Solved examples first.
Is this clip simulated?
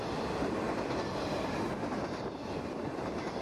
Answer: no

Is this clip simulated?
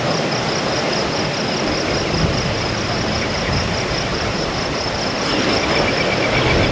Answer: no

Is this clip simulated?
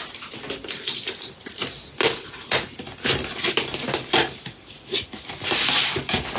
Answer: no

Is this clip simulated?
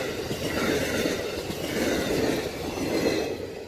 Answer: no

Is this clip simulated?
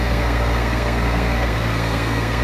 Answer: yes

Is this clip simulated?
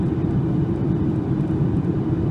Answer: no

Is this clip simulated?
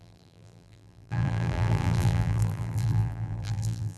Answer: yes